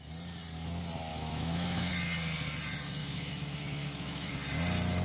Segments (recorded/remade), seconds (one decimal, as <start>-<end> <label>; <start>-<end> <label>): 0.0-1.1 recorded; 1.1-1.9 remade; 1.9-3.0 recorded; 3.0-4.3 remade; 4.3-5.0 recorded